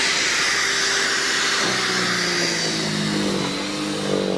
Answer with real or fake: real